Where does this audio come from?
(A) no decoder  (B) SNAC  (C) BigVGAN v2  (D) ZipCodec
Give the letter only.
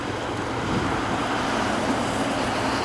A